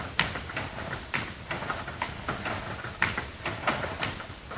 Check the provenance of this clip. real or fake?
real